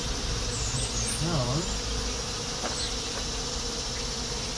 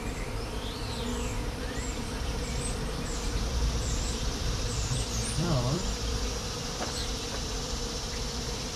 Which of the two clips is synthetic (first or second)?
second